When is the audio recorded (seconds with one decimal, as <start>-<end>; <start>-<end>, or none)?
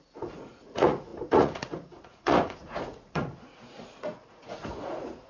none